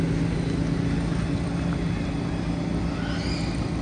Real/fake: real